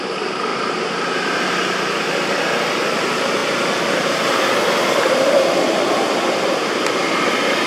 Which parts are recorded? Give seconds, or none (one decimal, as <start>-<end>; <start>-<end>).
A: 0.0-0.5; 2.0-7.7